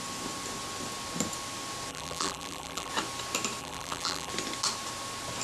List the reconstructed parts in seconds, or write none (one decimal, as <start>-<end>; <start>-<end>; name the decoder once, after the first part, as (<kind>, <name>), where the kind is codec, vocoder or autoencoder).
1.9-2.9 (vocoder, BigVGAN v2); 3.6-4.3